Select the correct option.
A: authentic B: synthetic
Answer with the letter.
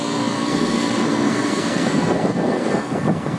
B